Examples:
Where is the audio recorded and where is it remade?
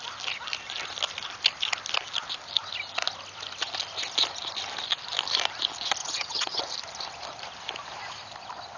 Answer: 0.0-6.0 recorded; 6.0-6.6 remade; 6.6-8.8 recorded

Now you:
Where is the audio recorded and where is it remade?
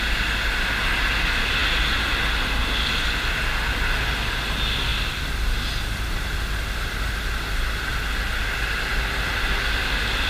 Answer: 0.0-10.3 recorded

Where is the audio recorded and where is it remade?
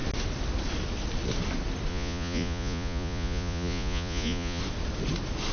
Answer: 0.0-1.9 recorded; 1.9-4.6 remade; 4.6-5.5 recorded